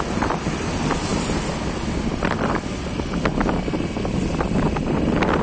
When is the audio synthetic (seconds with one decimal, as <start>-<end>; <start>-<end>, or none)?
none